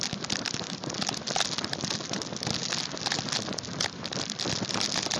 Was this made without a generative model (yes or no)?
yes